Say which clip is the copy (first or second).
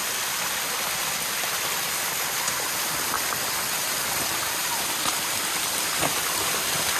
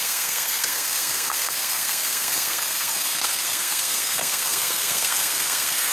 second